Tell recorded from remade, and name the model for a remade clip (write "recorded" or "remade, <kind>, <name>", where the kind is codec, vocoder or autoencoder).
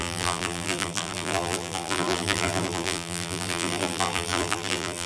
remade, vocoder, BigVGAN v2